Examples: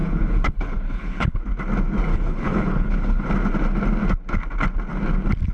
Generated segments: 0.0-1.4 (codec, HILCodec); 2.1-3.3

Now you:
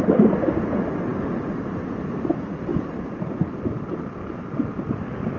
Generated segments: none

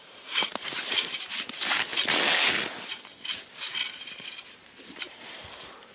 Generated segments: 0.0-1.9 (vocoder, BigVGAN v2); 3.3-5.9

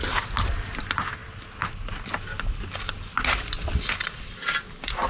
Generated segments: none

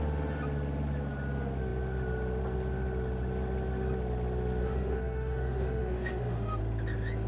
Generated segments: 4.6-6.6 (autoencoder, DAC-VAE)

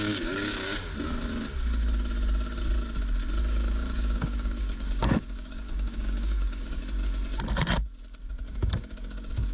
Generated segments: 0.0-0.9 (codec, DAC); 3.4-6.8; 8.3-9.5